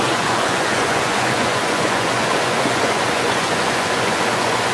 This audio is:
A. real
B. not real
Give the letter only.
B